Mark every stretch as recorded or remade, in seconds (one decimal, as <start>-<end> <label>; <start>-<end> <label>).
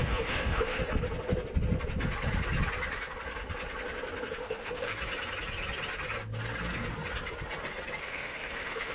0.0-0.8 remade; 0.8-4.3 recorded; 4.3-4.9 remade; 4.9-8.0 recorded; 8.0-8.9 remade